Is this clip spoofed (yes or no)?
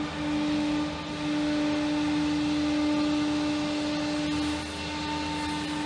no